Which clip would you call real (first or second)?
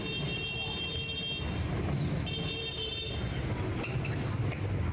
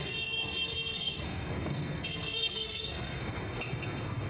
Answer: first